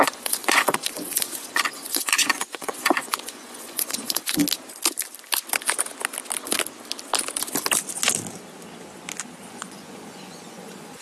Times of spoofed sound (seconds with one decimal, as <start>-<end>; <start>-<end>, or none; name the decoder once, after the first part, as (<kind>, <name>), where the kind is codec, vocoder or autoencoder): 0.0-4.4 (vocoder, Vocos); 9.5-11.0